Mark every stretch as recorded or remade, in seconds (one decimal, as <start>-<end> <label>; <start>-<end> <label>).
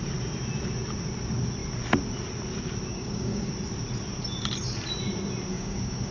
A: 0.0-2.9 recorded; 2.9-3.5 remade; 3.5-5.5 recorded; 5.5-6.1 remade